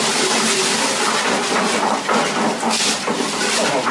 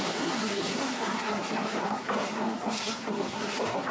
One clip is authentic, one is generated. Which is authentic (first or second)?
first